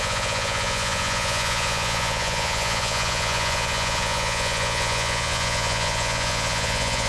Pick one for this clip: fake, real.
fake